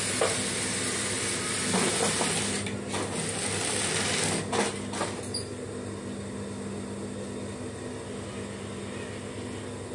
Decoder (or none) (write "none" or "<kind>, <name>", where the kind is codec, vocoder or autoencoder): none